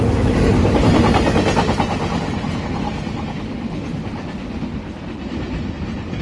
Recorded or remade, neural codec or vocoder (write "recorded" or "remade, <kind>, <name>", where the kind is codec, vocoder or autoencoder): recorded